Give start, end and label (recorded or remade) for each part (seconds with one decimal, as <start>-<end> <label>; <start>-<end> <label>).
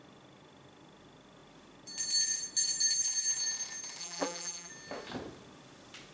0.0-4.0 recorded; 4.0-4.7 remade; 4.7-6.1 recorded